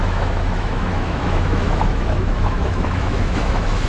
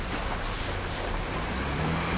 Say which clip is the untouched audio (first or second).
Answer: second